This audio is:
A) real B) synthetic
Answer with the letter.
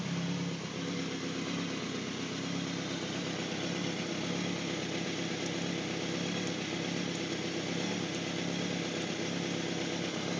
A